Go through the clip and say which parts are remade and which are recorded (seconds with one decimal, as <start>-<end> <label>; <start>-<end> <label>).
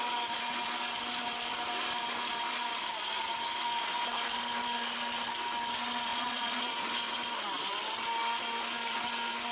0.0-6.1 recorded; 6.1-6.9 remade; 6.9-9.5 recorded